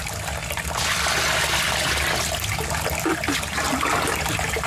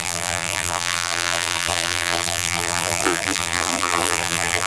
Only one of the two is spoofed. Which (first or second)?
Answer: second